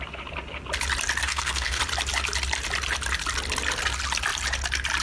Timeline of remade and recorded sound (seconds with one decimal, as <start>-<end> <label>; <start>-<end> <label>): 0.0-1.2 recorded; 1.2-1.8 remade; 1.8-5.0 recorded